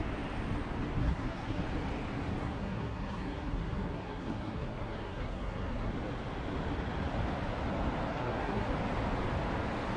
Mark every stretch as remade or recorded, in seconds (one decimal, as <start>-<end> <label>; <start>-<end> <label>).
0.0-1.0 recorded; 1.0-1.6 remade; 1.6-2.4 recorded; 2.4-5.9 remade; 5.9-8.1 recorded; 8.1-8.7 remade; 8.7-10.0 recorded